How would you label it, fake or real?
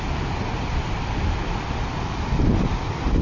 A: real